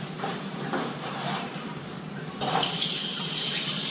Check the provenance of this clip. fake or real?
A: fake